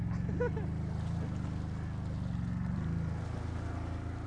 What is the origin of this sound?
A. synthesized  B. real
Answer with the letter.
B